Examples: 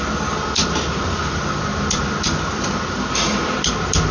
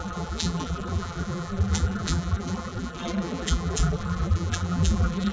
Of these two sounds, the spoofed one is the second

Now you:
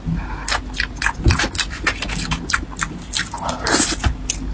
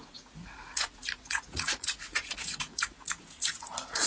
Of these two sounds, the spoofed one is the second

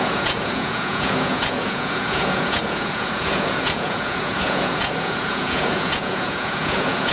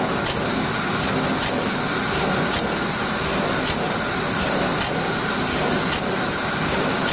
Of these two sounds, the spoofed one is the first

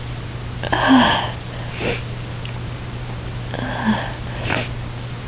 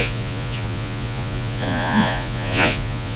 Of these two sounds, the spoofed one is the second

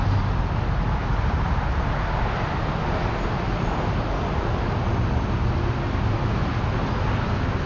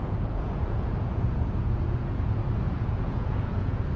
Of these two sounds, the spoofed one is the second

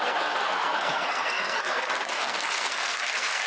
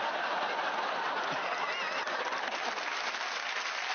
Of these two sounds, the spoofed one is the first